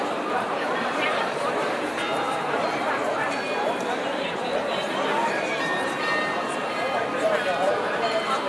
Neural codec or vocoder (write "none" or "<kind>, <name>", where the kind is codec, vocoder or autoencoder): vocoder, BigVGAN v2